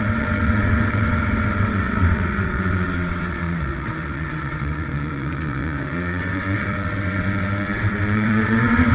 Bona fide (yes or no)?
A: no